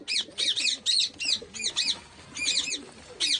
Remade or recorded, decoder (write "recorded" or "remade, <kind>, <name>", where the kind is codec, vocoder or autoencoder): recorded